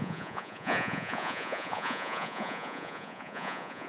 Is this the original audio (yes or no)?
no